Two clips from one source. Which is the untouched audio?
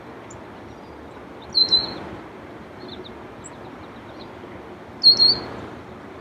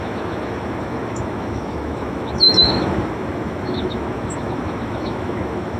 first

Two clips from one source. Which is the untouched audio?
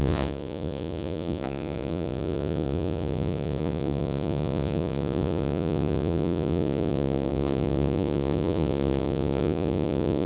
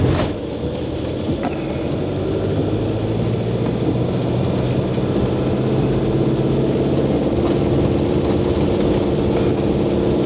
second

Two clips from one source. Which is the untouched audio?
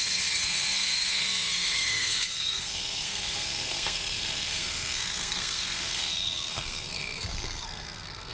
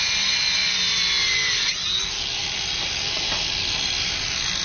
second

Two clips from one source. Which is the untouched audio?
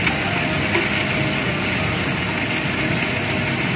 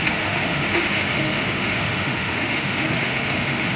first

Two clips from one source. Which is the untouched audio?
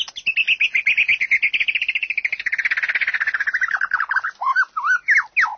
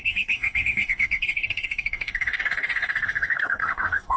first